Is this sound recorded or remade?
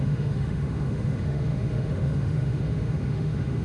remade